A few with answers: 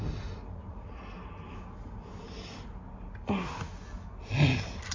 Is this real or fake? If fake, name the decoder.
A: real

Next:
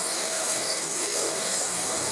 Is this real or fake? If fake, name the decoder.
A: fake, codec, DAC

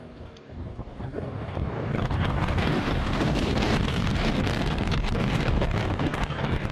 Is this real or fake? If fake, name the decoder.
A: fake, codec, DAC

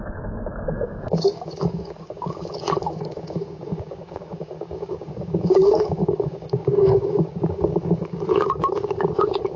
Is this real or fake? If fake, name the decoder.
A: fake, codec, DAC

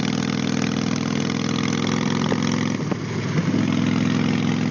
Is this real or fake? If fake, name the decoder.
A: real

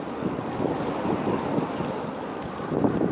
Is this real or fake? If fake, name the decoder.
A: real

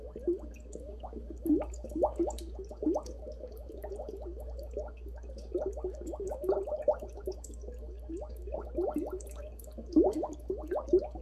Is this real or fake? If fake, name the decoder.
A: fake, codec, DAC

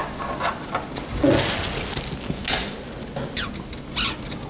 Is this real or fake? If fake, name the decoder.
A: real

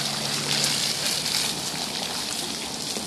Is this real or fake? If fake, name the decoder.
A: real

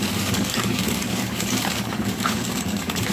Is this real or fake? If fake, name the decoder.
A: fake, codec, DAC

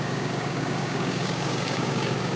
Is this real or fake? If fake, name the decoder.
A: fake, codec, DAC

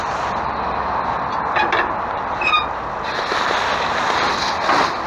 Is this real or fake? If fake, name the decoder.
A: real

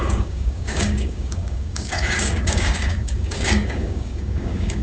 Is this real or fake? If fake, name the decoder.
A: fake, codec, DAC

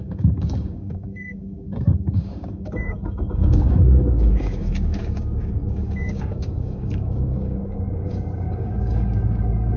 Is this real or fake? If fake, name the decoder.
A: fake, codec, DAC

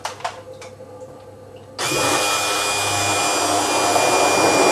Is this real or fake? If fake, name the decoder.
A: real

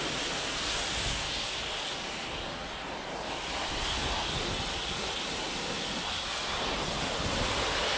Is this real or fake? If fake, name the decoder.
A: real